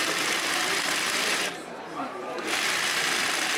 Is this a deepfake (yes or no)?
yes